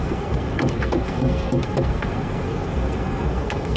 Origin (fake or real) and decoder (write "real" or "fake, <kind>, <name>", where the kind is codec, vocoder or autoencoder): fake, codec, SNAC